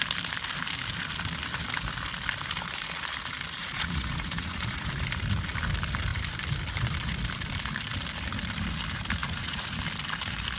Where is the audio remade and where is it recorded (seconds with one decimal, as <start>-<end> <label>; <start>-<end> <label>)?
0.0-3.6 recorded; 3.6-4.9 remade; 4.9-9.2 recorded; 9.2-9.8 remade; 9.8-10.6 recorded